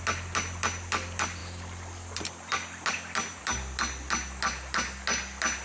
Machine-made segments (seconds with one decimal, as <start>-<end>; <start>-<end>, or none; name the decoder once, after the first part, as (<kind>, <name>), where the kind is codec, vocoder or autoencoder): none